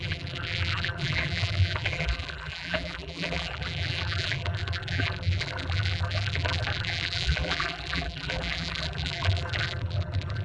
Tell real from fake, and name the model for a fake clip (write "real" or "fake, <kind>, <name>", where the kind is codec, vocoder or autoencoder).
fake, vocoder, BigVGAN v2